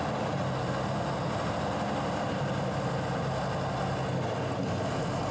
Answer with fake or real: real